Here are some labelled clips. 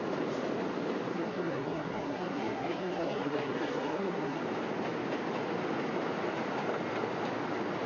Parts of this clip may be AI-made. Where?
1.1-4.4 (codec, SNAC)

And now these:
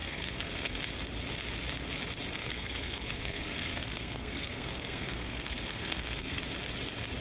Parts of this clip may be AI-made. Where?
0.0-0.8 (codec, SNAC); 2.4-6.4

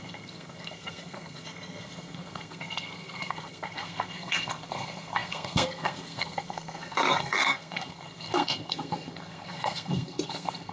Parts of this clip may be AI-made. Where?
0.0-10.7 (codec, SNAC)

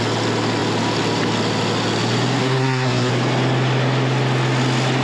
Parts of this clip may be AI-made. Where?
2.4-3.1 (codec, SNAC)

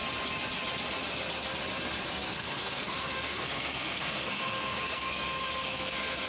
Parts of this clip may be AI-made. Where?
2.2-6.3 (codec, SNAC)

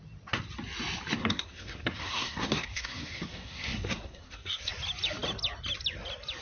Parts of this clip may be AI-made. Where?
1.2-4.7 (codec, SNAC)

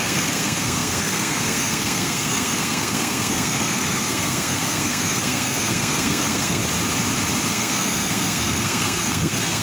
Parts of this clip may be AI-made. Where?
0.0-6.6 (codec, SNAC); 7.5-9.6